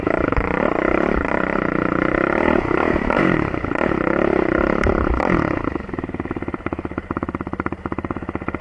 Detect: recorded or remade remade